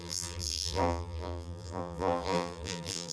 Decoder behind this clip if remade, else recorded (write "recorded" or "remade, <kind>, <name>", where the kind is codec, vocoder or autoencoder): remade, vocoder, BigVGAN v2